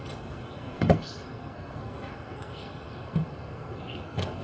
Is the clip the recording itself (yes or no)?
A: no